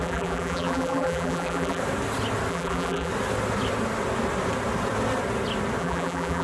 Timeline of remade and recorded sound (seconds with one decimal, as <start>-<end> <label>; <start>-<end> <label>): 0.0-1.8 remade; 1.8-2.5 recorded; 2.5-3.1 remade; 3.1-5.8 recorded; 5.8-6.4 remade